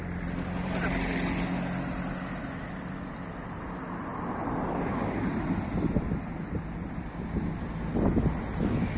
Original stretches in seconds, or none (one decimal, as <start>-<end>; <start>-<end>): 0.0-9.0